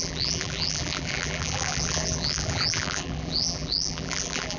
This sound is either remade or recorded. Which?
remade